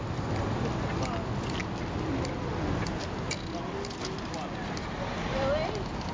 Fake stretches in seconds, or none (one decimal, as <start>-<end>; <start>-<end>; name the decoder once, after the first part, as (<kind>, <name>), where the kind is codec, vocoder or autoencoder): none